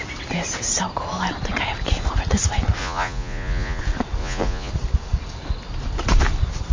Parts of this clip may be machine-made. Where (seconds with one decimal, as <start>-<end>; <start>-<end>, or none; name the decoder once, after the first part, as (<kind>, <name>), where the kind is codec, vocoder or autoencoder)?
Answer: 2.8-3.8 (vocoder, Vocos); 4.2-4.7